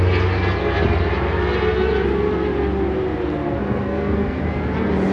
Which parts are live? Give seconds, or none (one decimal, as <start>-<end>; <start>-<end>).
0.0-3.6; 4.4-5.1